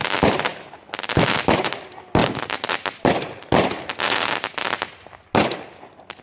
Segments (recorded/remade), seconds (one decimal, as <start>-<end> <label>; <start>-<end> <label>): 0.0-6.2 recorded